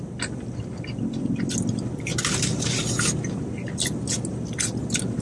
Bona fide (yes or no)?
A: yes